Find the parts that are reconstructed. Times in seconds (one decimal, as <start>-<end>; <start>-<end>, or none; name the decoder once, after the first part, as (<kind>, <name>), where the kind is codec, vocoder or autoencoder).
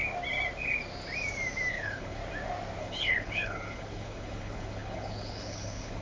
1.7-2.2 (codec, HILCodec); 2.8-6.0